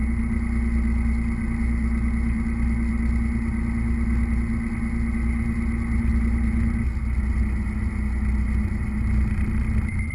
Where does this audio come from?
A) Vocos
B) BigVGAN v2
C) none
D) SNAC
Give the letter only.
C